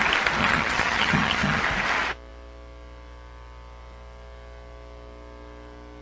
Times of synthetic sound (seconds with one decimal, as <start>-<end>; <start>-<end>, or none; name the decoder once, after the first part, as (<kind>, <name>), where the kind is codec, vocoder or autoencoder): 0.4-1.6 (vocoder, HiFi-GAN)